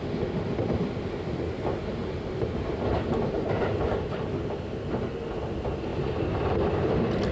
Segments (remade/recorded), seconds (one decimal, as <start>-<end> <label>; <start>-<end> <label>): 0.0-7.3 recorded